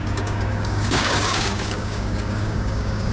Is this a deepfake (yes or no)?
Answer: yes